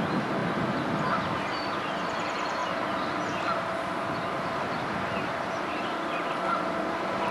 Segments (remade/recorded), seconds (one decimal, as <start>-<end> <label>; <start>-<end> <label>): 0.0-7.3 recorded